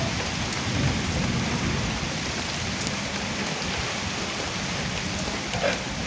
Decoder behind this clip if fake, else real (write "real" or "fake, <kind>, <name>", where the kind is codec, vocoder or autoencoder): real